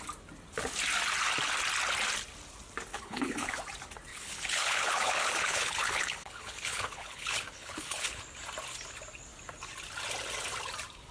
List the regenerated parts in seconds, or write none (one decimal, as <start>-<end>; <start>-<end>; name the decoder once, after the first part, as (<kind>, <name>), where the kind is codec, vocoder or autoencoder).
2.9-3.6 (codec, HILCodec); 4.1-8.2